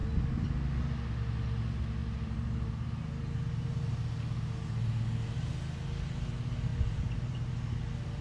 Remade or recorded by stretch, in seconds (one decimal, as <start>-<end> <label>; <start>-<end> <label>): 0.0-2.0 recorded; 2.0-3.9 remade; 3.9-6.7 recorded; 6.7-7.5 remade; 7.5-8.2 recorded